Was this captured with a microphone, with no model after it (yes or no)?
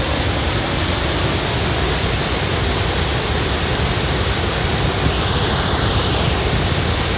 yes